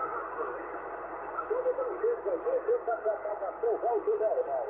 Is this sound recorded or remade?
recorded